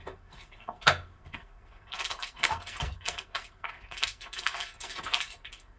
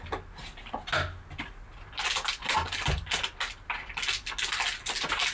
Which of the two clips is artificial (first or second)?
first